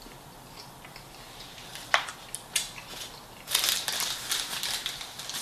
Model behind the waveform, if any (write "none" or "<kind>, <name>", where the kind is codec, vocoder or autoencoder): none